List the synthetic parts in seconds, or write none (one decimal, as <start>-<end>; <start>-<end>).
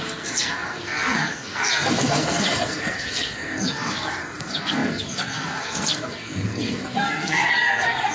0.0-8.1